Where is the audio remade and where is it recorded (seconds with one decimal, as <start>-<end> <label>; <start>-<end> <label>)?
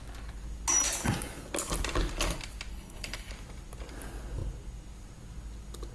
0.0-2.7 recorded; 2.7-3.3 remade; 3.3-5.9 recorded